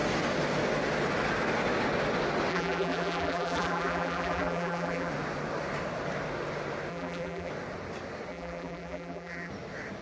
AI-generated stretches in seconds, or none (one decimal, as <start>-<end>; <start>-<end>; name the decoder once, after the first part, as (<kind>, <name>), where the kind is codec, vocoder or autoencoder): 2.5-5.1 (vocoder, BigVGAN v2); 6.9-7.5; 8.3-9.5